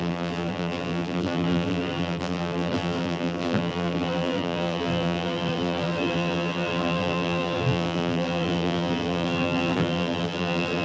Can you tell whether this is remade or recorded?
remade